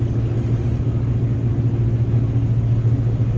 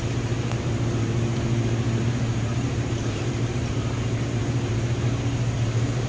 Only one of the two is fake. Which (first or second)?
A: second